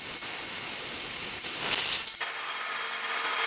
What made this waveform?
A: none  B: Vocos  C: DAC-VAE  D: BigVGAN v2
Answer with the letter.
A